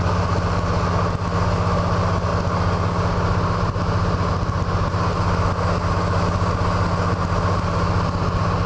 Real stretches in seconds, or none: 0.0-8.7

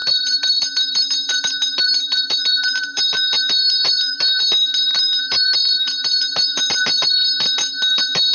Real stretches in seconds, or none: 4.4-4.9; 6.6-8.3

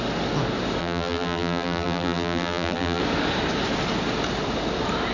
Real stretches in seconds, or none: 0.0-0.8; 3.0-5.1

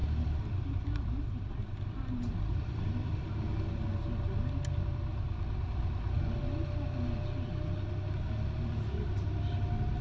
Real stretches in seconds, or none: 4.0-10.0

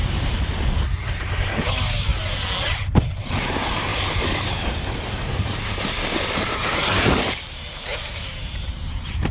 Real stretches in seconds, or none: 0.0-1.2; 2.1-3.2; 3.9-4.7

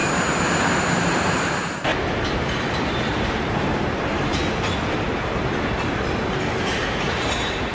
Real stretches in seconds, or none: 0.0-0.9; 1.9-3.4; 4.4-6.6

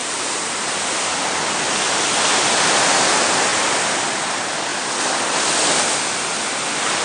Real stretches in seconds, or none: 0.8-7.0